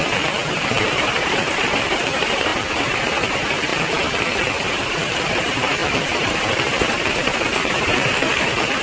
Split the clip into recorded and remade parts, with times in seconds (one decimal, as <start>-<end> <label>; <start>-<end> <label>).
0.0-1.0 recorded; 1.0-3.7 remade; 3.7-4.7 recorded; 4.7-8.8 remade